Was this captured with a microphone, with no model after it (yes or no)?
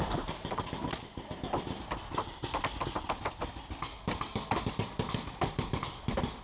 yes